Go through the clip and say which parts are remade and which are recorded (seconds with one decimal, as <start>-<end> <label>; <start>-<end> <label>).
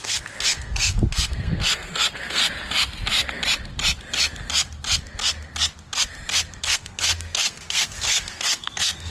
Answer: 0.0-2.4 remade; 2.4-6.6 recorded; 6.6-9.1 remade